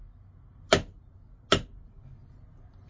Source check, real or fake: real